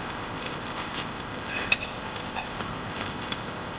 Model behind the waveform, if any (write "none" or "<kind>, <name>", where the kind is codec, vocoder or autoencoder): codec, ZipCodec